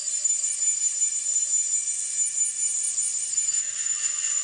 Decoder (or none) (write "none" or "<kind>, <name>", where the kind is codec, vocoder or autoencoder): none